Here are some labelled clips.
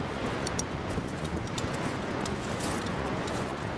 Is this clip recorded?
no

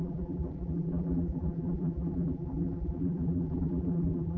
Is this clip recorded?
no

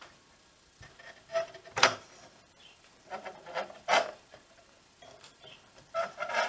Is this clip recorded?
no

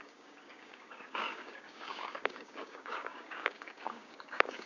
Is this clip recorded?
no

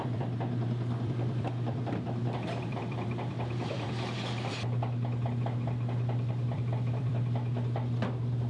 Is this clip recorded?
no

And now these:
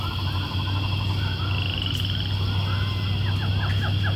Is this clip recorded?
yes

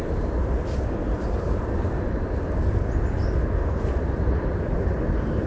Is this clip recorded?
yes